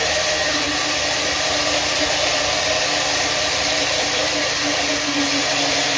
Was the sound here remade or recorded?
remade